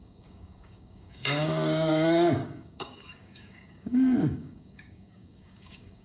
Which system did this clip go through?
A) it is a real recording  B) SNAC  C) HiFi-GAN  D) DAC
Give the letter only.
D